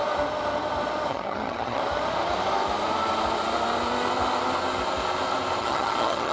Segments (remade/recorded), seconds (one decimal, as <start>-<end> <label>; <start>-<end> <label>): 0.0-1.1 recorded; 1.1-1.8 remade; 1.8-5.6 recorded; 5.6-6.3 remade